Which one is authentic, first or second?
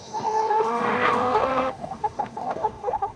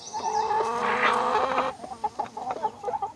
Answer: second